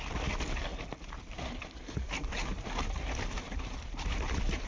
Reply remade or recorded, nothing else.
remade